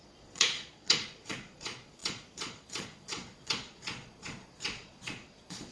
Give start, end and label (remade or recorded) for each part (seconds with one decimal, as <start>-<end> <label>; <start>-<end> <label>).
0.0-5.7 remade